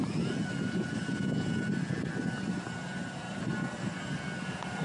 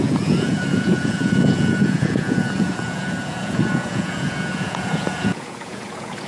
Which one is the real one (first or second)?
first